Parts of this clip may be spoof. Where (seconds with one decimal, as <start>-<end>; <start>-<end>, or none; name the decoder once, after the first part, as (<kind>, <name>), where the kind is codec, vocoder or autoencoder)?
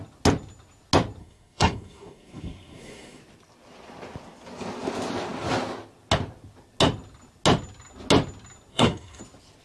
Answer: 1.2-3.2 (codec, SNAC); 8.7-9.2